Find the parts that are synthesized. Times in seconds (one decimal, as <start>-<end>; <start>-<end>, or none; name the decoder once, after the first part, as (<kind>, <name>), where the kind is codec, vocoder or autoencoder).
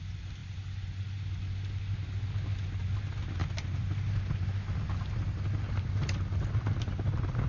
none